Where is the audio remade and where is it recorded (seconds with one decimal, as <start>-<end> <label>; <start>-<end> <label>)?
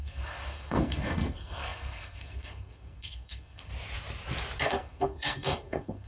0.0-3.7 remade; 3.7-4.6 recorded; 4.6-6.1 remade